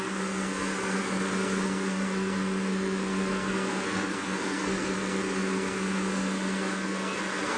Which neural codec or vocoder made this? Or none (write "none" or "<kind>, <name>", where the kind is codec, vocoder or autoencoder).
codec, SNAC